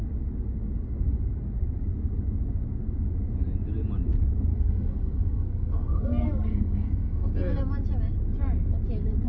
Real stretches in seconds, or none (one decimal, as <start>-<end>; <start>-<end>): 0.0-4.5; 7.3-9.3